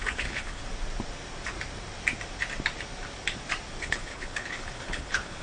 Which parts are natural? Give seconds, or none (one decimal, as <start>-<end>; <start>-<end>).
0.6-3.8